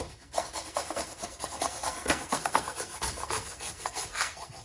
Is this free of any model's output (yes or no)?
no